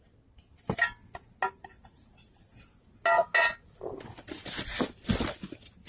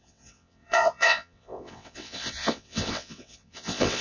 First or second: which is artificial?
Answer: second